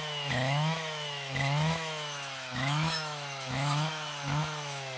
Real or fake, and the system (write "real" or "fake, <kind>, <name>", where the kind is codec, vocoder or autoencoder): fake, autoencoder, DAC-VAE